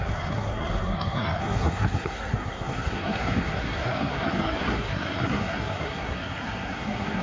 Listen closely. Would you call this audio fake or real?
fake